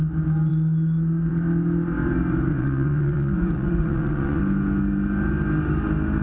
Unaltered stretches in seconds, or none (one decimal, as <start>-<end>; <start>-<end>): 0.0-2.5; 4.4-6.2